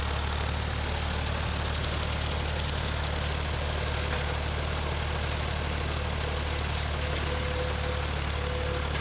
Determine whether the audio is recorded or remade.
recorded